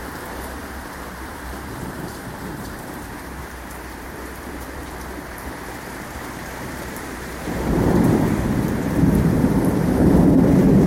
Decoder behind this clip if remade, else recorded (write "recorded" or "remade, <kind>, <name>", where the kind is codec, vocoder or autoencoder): remade, vocoder, BigVGAN v2